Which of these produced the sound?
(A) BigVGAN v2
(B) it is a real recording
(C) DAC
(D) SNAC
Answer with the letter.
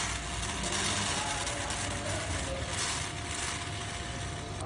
B